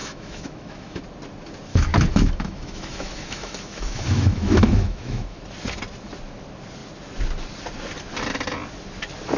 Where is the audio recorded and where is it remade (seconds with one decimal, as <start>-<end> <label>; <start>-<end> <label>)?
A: 0.0-1.0 remade; 1.0-1.7 recorded; 1.7-5.4 remade; 5.4-9.4 recorded